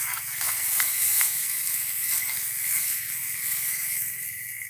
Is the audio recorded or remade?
remade